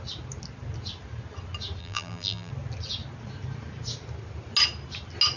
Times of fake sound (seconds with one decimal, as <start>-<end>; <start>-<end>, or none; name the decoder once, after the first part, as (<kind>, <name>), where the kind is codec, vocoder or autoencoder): 1.8-2.5 (vocoder, BigVGAN v2)